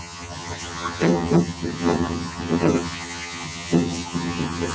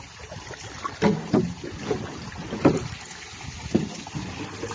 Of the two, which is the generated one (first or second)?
first